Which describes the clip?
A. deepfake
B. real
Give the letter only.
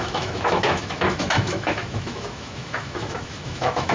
A